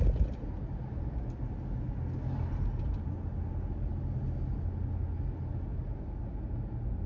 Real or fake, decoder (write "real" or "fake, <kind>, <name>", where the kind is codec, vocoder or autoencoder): real